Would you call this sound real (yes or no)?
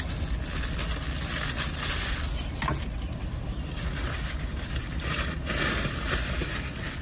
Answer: yes